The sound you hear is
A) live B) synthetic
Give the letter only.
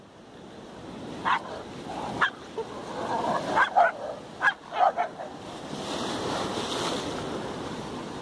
A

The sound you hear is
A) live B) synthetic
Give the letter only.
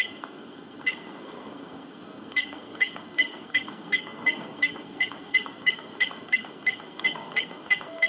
B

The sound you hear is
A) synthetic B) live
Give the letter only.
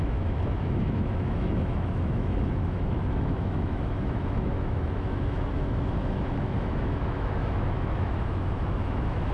A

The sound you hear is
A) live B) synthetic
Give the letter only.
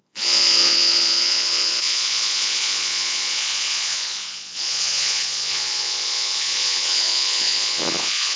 B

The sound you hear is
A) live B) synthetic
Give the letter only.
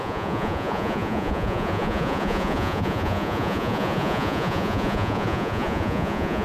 B